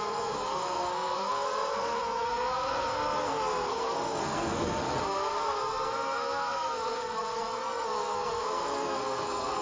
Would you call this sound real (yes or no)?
no